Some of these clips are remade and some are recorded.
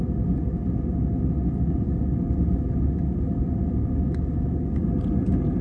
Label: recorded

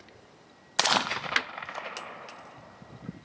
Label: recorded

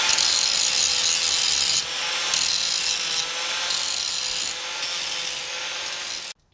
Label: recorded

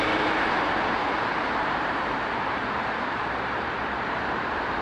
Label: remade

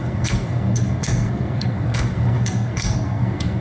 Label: remade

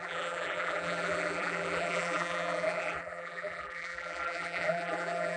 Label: remade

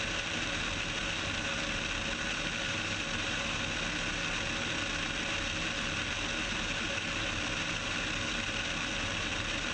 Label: recorded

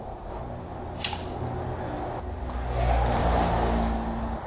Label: recorded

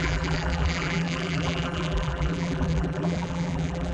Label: remade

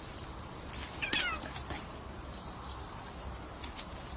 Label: recorded